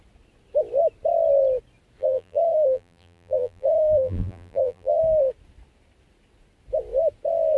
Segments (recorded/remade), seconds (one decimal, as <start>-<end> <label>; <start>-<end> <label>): 0.0-2.0 recorded; 2.0-5.0 remade; 5.0-7.6 recorded